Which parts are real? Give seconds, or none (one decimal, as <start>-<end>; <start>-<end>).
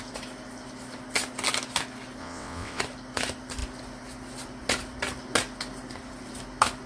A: 0.0-2.2; 2.8-6.9